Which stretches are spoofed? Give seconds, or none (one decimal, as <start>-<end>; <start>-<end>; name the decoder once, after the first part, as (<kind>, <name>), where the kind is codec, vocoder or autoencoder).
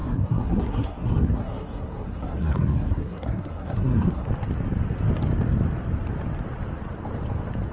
0.0-4.3 (codec, SNAC)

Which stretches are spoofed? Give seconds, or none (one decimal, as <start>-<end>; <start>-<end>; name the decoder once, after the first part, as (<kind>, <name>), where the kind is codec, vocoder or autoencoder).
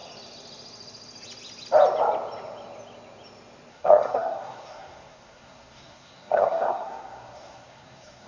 3.7-8.3 (codec, SNAC)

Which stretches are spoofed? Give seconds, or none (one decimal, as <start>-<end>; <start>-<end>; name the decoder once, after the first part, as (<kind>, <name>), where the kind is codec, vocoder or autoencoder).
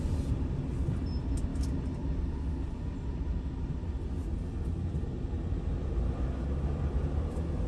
none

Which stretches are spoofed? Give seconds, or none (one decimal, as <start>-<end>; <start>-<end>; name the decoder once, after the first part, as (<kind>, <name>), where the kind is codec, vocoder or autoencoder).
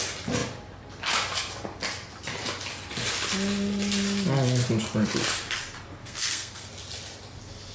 6.0-6.7 (codec, SNAC)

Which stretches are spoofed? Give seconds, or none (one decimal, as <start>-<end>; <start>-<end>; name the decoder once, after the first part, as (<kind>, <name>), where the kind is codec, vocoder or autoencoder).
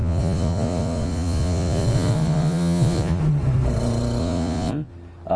0.0-3.2 (vocoder, Vocos); 4.2-4.9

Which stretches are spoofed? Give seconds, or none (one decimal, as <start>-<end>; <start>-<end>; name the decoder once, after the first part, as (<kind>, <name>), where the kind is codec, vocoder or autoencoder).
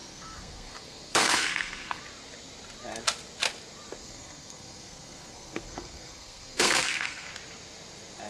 0.0-2.0 (codec, SNAC); 4.0-7.3